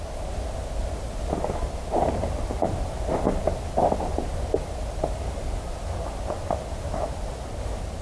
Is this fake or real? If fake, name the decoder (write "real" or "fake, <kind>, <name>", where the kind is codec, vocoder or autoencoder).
real